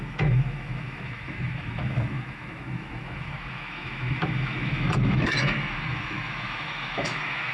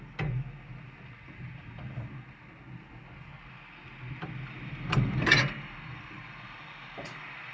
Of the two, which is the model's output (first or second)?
first